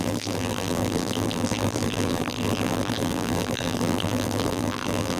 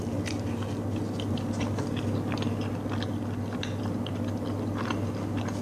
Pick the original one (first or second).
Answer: second